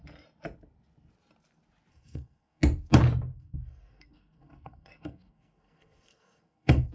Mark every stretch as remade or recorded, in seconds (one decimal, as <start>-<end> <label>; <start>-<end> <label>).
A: 0.0-1.9 recorded; 1.9-2.6 remade; 2.6-3.3 recorded; 3.3-6.9 remade